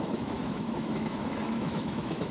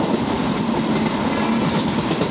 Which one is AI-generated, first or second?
first